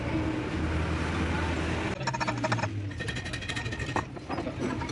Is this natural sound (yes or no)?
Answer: yes